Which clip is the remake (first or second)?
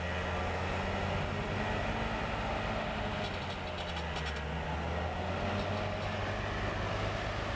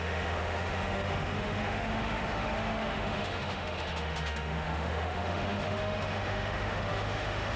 second